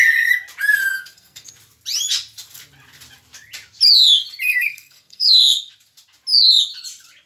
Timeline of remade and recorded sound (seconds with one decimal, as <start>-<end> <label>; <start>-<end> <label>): 0.0-0.9 recorded; 0.9-1.5 remade; 1.5-4.5 recorded; 4.5-5.7 remade; 5.7-7.3 recorded